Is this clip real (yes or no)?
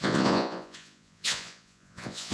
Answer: no